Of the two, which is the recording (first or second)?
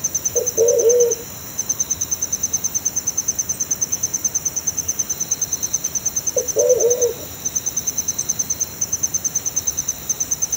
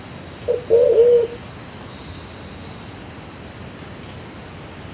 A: second